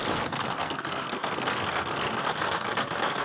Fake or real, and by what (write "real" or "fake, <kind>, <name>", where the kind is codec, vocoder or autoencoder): fake, codec, SNAC